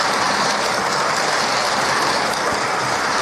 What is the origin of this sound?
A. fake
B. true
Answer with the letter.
A